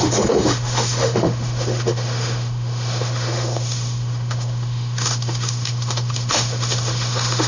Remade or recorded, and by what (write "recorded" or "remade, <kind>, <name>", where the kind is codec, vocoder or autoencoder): remade, autoencoder, DAC-VAE